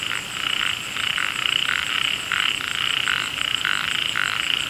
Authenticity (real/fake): real